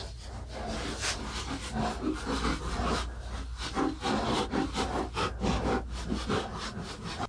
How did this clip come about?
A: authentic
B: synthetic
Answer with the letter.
A